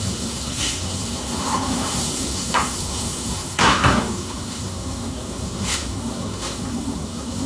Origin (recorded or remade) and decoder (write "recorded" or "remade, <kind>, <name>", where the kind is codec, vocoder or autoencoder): remade, codec, SNAC